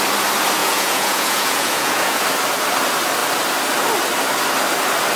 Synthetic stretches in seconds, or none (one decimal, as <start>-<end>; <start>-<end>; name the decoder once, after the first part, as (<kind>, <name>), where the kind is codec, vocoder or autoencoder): 0.6-2.2 (vocoder, Vocos)